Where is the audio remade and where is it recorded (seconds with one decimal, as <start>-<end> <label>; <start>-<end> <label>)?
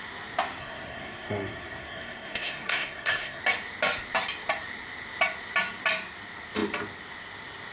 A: 0.0-0.6 recorded; 0.6-3.4 remade; 3.4-7.7 recorded